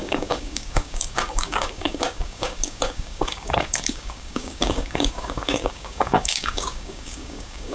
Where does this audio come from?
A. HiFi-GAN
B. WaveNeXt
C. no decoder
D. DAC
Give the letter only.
D